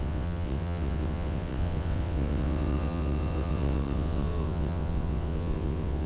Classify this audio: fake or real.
fake